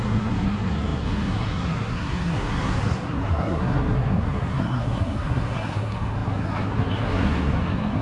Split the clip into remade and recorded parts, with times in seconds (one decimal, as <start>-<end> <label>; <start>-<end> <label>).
0.0-8.0 remade